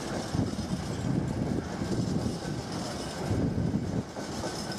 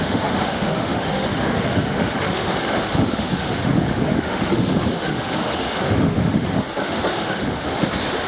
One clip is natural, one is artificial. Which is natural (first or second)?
first